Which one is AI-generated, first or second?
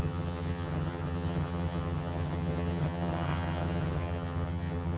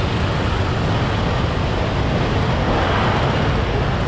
first